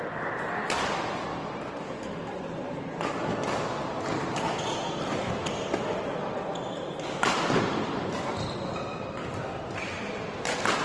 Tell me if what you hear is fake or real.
real